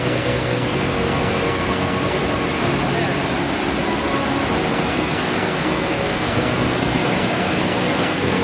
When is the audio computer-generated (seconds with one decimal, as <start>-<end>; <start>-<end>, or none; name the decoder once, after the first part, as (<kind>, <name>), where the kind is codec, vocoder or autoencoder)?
0.0-2.2 (codec, SNAC); 4.7-8.4

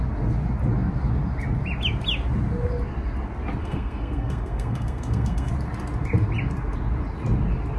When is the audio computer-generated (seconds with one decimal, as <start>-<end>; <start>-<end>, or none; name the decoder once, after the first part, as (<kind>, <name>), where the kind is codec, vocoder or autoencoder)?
3.6-5.5 (codec, SNAC)